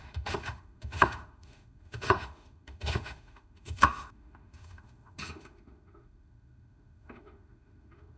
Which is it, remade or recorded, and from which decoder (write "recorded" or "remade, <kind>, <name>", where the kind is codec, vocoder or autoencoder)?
remade, autoencoder, DAC-VAE